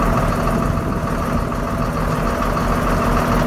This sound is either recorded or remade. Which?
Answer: recorded